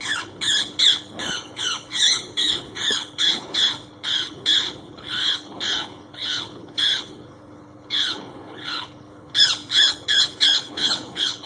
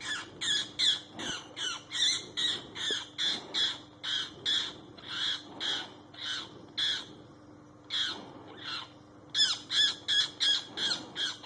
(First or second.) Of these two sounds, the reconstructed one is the first